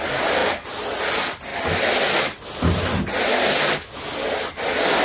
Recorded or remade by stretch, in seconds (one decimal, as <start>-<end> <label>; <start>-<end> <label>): 0.0-5.0 recorded